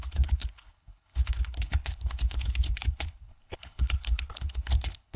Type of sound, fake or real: fake